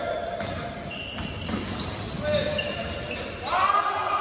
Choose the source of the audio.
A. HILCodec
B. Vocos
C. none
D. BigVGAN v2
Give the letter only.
C